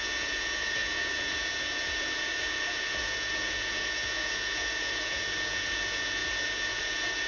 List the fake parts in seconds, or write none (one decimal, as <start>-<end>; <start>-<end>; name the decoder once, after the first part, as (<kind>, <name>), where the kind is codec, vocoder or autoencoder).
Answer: 0.0-7.3 (vocoder, Vocos)